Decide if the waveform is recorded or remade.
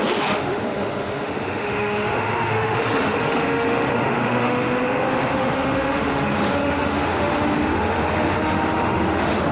remade